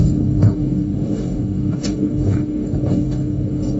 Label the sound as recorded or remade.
remade